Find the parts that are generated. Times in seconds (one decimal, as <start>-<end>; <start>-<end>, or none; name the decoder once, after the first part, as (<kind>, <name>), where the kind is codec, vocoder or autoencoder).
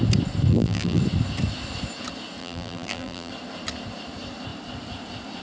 0.5-1.0 (vocoder, BigVGAN v2); 2.4-3.3